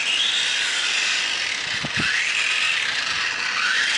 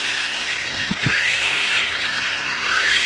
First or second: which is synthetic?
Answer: second